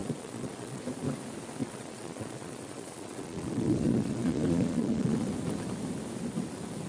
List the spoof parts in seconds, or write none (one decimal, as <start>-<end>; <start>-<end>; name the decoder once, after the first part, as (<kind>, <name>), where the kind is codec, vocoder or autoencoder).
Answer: 0.0-0.8 (vocoder, Vocos); 1.6-5.3